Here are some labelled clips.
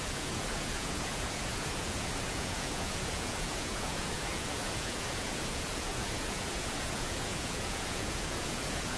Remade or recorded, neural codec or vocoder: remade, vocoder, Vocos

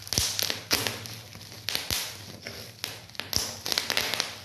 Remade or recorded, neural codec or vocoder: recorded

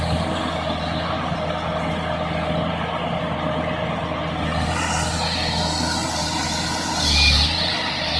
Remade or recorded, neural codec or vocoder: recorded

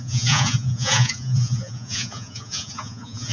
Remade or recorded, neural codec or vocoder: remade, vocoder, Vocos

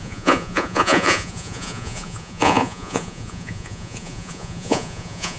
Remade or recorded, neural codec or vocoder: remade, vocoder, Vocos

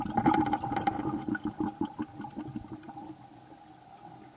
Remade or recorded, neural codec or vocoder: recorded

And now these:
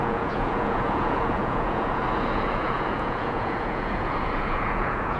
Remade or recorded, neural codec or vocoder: remade, vocoder, Vocos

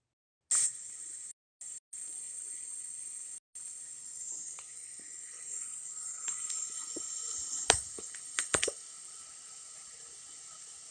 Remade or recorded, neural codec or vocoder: recorded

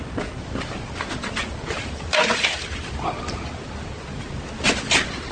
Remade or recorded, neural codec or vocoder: recorded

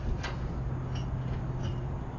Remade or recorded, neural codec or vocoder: recorded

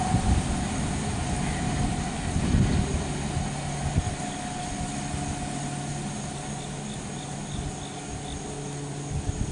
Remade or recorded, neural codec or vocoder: recorded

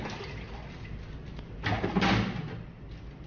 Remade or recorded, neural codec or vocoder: recorded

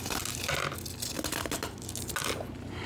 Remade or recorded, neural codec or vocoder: recorded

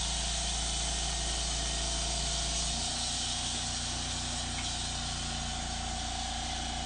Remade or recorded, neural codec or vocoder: recorded